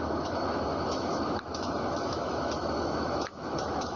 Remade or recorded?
remade